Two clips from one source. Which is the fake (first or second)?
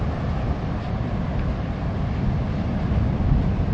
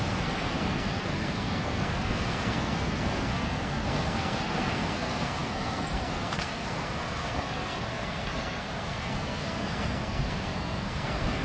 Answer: second